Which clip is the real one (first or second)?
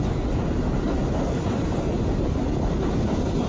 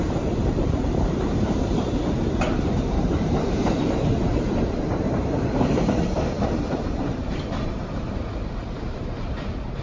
first